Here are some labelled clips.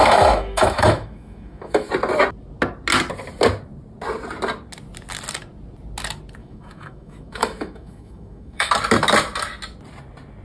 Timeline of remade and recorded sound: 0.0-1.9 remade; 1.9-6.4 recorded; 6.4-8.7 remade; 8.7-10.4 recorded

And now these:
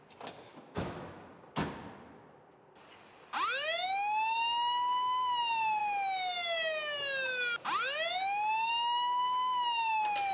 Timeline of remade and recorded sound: 0.0-0.5 recorded; 0.5-1.2 remade; 1.2-10.3 recorded

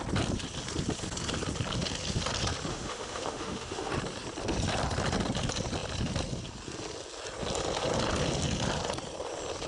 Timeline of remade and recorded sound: 0.0-2.7 recorded; 2.7-3.9 remade; 3.9-9.7 recorded

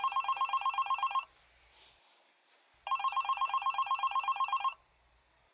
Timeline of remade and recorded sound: 0.0-3.0 recorded; 3.0-4.6 remade; 4.6-5.5 recorded

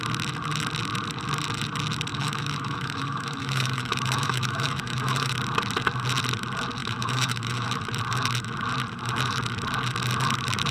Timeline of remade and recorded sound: 0.0-2.1 recorded; 2.1-5.3 remade; 5.3-6.8 recorded; 6.8-7.8 remade; 7.8-10.7 recorded

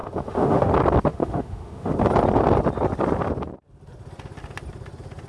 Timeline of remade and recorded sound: 0.0-0.7 remade; 0.7-1.1 recorded; 1.1-1.9 remade; 1.9-5.3 recorded

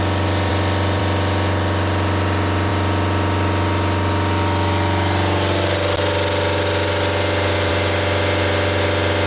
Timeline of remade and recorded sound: 0.0-9.3 recorded

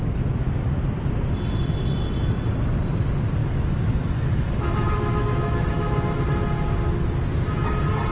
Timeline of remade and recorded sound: 0.0-3.4 recorded; 3.4-6.2 remade; 6.2-8.1 recorded